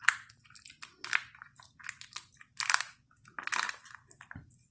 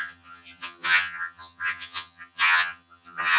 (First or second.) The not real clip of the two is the second